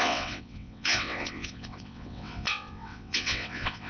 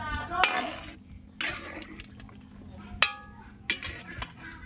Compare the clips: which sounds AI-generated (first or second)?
first